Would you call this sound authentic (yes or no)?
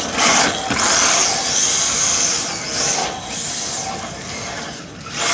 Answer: yes